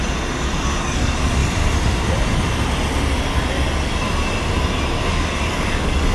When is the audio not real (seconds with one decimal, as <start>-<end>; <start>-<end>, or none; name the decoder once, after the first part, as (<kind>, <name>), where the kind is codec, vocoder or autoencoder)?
0.8-1.4 (codec, DAC); 5.1-6.1